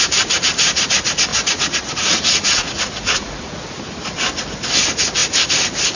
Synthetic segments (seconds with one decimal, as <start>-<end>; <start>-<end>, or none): 1.3-3.8